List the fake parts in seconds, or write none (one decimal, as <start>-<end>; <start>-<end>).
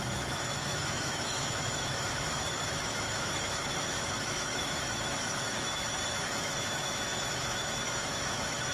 0.0-8.7